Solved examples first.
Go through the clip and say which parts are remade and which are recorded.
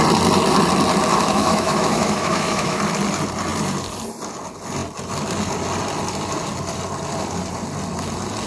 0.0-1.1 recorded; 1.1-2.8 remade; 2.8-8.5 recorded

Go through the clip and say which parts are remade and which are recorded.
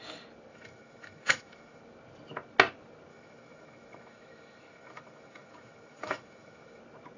0.0-0.5 recorded; 0.5-1.8 remade; 1.8-3.1 recorded; 3.1-6.8 remade; 6.8-7.2 recorded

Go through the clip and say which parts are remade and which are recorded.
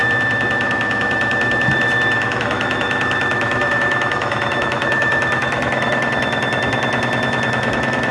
0.0-8.1 remade